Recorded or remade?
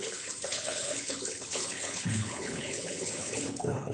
remade